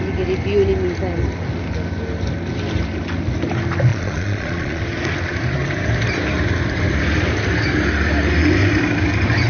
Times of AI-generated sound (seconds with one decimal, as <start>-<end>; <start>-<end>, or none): 3.9-4.8